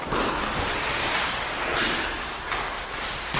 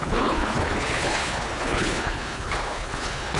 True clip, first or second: first